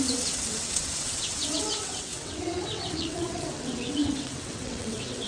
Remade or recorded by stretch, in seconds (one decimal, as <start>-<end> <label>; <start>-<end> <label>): 0.0-5.3 remade